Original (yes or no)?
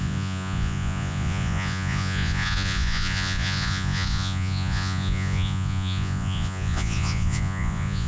no